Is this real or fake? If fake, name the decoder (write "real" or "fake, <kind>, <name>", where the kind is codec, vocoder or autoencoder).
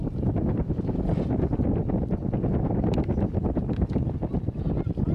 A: real